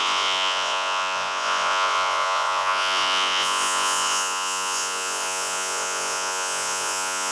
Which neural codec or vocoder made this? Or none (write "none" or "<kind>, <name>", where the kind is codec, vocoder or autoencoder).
vocoder, Vocos